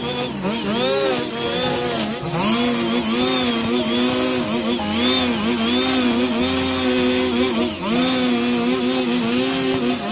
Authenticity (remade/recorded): recorded